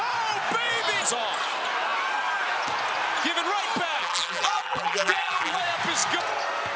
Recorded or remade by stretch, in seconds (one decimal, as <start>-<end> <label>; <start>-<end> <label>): 0.0-4.0 recorded; 4.0-5.6 remade; 5.6-6.8 recorded